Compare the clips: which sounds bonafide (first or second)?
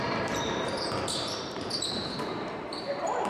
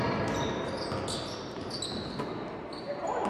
second